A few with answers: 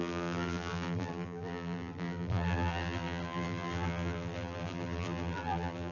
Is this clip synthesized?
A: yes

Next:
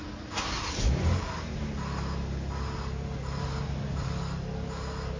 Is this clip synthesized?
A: no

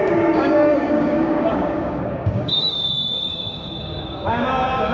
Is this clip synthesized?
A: yes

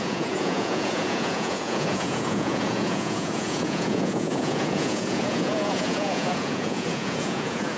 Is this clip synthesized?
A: yes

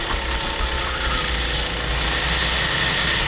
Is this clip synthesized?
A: no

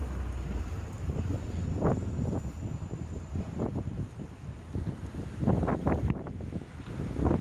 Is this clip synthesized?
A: no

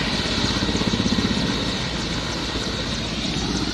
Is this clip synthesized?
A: no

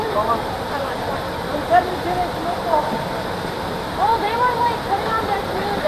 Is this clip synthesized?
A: yes